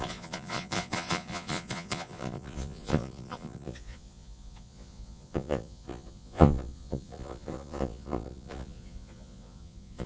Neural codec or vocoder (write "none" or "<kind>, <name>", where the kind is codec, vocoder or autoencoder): vocoder, Vocos